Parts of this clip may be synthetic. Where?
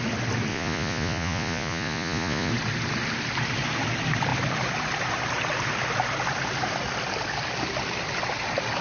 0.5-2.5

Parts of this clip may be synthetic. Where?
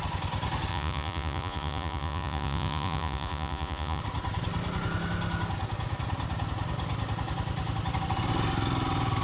0.7-4.0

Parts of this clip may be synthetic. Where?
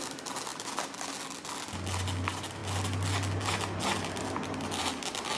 none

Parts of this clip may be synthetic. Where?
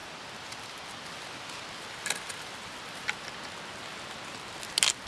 none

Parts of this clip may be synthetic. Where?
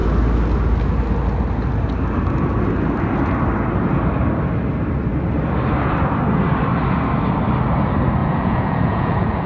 8.2-9.5